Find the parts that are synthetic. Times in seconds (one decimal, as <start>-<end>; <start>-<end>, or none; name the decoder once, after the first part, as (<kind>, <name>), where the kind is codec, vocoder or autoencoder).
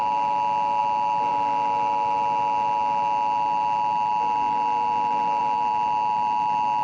none